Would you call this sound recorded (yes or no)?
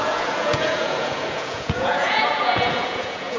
no